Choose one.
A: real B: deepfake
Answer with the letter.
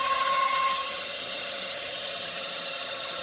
B